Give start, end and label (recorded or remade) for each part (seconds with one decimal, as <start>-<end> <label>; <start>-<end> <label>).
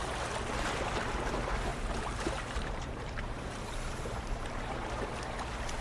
0.0-1.7 recorded; 1.7-5.2 remade; 5.2-5.8 recorded